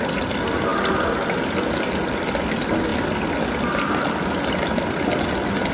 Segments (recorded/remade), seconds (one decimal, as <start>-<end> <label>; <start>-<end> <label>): 0.0-5.7 recorded